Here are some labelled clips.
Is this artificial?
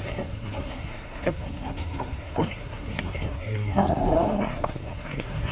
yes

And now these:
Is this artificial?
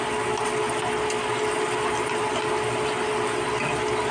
no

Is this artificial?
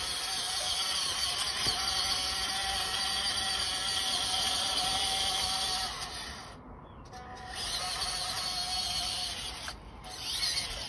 no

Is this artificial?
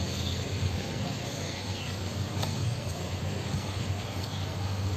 yes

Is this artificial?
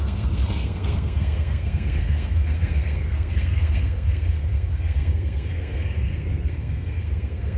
yes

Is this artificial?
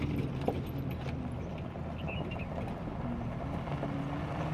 no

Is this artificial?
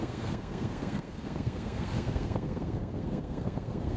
yes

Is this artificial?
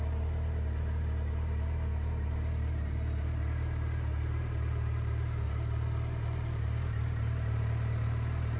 no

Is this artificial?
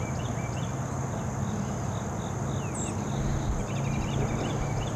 no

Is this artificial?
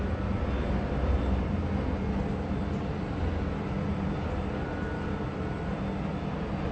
no